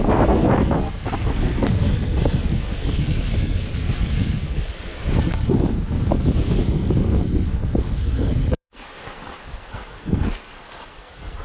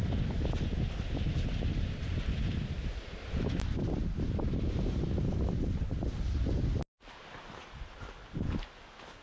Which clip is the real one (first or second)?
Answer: second